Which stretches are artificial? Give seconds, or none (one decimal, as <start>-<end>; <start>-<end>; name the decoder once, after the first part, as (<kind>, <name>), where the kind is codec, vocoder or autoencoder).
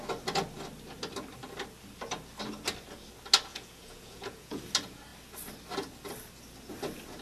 3.5-4.6 (vocoder, Vocos)